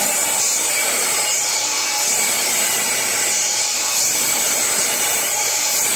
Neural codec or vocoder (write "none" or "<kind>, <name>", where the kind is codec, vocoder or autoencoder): none